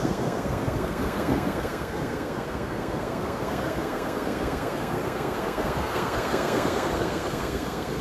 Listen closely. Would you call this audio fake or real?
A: fake